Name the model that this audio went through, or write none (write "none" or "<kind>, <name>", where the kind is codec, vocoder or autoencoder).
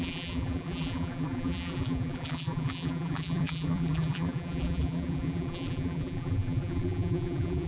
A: vocoder, BigVGAN v2